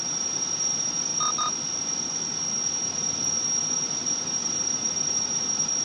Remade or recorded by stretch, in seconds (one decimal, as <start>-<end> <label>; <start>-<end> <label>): 0.0-1.1 remade; 1.1-2.7 recorded; 2.7-5.8 remade